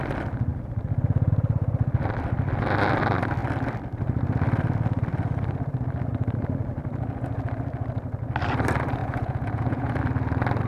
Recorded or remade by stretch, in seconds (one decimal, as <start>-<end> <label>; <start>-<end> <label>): 0.0-9.0 recorded; 9.0-10.0 remade; 10.0-10.7 recorded